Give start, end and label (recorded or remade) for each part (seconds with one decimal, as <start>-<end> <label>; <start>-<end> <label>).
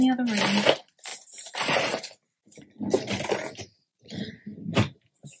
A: 0.0-1.1 recorded; 1.1-4.3 remade; 4.3-5.4 recorded